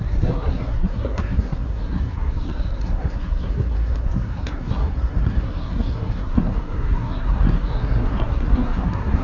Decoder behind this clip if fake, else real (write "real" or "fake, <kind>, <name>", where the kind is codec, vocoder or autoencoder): fake, codec, SNAC